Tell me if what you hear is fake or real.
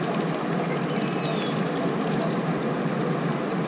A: real